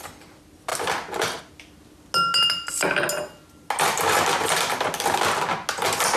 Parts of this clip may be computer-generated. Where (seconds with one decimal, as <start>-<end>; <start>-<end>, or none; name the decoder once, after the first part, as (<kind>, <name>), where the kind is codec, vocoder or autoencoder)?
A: none